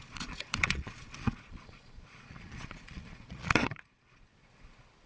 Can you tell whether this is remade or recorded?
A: remade